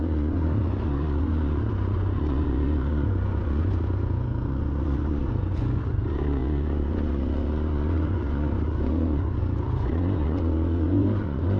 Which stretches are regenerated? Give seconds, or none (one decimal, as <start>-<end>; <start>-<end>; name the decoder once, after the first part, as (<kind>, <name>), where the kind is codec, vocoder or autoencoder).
0.0-11.6 (vocoder, Vocos)